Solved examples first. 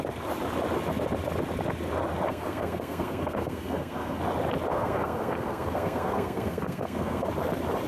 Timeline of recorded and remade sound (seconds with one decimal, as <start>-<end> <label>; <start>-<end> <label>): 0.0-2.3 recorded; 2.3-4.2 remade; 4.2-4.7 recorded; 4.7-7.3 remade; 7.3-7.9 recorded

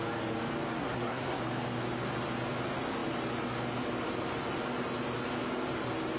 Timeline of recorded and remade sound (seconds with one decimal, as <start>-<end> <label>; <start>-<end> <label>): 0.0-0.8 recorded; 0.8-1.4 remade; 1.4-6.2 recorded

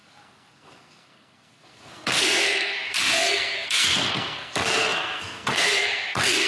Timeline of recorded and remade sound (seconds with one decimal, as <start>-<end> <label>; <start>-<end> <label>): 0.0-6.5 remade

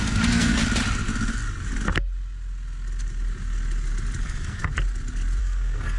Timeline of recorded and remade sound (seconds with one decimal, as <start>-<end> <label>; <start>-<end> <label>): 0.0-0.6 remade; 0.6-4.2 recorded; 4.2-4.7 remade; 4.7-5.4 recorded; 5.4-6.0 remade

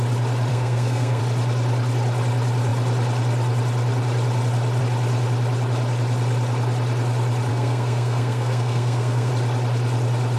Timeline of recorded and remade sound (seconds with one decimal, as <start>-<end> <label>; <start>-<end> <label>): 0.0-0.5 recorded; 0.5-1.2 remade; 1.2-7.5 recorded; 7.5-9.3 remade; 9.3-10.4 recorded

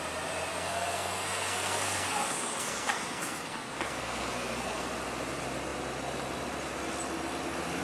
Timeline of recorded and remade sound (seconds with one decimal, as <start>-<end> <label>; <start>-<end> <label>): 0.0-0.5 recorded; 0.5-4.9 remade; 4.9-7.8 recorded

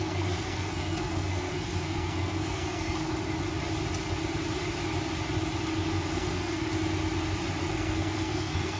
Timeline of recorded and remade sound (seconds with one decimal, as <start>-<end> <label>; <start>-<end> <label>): 0.0-3.1 remade; 3.1-6.1 recorded; 6.1-6.7 remade; 6.7-7.6 recorded; 7.6-8.8 remade